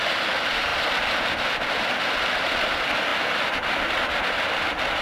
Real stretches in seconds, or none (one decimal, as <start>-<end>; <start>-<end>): 0.0-5.0